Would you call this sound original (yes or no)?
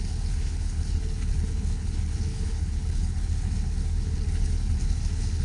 no